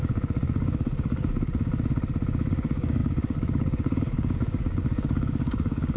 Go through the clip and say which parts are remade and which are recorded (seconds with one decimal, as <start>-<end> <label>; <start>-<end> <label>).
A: 0.0-1.7 remade; 1.7-2.5 recorded; 2.5-6.0 remade